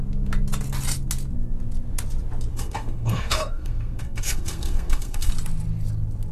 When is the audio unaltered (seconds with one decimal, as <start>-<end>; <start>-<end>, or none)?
0.0-2.5; 5.3-6.3